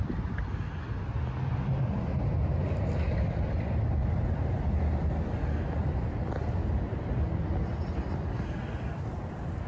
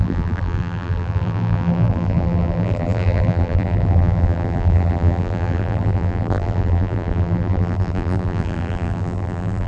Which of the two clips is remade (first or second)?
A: second